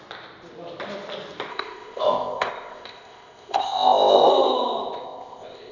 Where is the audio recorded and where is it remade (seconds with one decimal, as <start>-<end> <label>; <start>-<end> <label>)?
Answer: 0.0-1.5 recorded; 1.5-4.3 remade; 4.3-5.0 recorded; 5.0-5.7 remade